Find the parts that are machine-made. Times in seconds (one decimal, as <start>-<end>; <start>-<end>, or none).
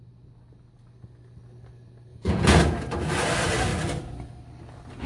2.1-2.6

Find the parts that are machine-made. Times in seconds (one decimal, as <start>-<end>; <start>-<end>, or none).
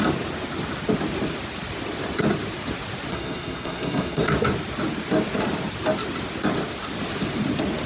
3.1-4.3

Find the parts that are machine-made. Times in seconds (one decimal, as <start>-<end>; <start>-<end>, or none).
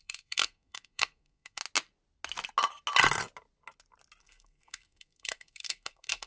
0.0-1.6; 4.2-6.3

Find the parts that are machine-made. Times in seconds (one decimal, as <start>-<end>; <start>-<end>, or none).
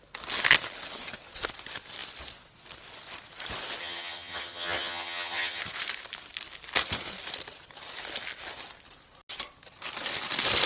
3.8-5.6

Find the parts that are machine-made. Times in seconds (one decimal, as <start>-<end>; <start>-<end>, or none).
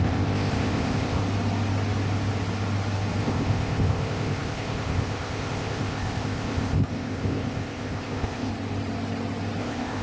0.0-1.2; 3.2-8.5; 9.6-10.0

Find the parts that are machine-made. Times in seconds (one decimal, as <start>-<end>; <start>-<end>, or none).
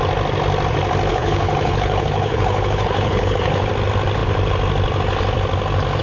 1.1-3.7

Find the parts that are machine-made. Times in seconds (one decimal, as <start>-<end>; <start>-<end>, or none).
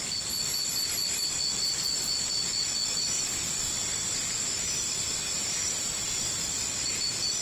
2.3-6.3